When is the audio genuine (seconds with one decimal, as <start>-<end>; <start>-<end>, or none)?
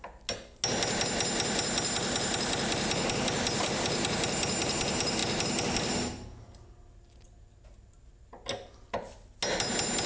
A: 0.0-10.1